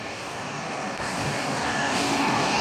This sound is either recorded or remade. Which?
remade